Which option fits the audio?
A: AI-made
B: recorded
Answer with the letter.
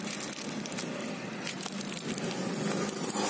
B